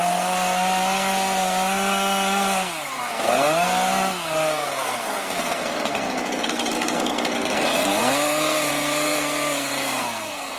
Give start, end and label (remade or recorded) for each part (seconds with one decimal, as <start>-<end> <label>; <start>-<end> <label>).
0.0-10.6 remade